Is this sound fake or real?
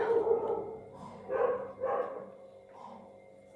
real